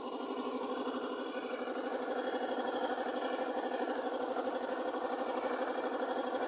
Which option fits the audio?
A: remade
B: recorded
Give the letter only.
B